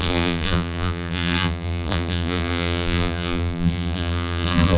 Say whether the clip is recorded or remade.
remade